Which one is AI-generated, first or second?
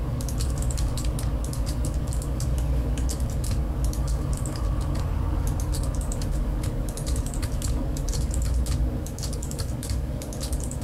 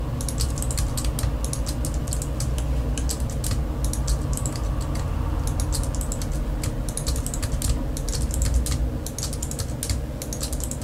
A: first